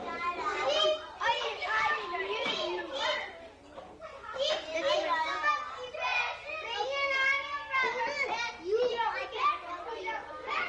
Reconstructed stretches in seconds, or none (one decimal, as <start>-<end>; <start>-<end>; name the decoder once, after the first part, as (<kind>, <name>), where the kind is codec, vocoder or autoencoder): 0.5-3.6 (vocoder, BigVGAN v2)